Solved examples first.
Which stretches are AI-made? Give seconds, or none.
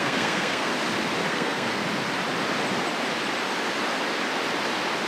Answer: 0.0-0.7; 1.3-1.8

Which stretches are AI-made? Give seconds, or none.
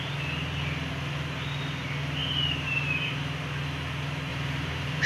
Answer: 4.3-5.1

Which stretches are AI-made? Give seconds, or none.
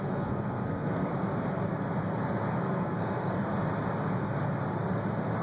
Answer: 0.0-1.1; 2.5-3.5